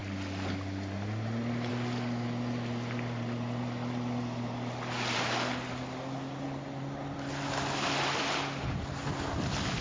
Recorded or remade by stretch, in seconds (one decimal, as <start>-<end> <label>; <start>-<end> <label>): 0.0-9.8 recorded